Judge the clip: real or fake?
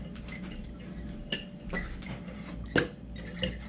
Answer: real